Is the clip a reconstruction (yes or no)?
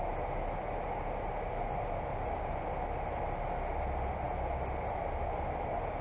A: no